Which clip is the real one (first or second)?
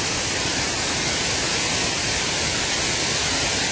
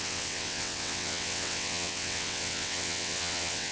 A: first